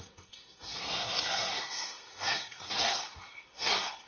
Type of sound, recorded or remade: remade